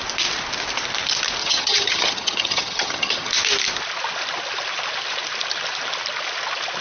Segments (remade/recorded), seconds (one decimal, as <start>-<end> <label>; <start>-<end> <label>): 0.0-1.4 recorded; 1.4-3.3 remade; 3.3-6.8 recorded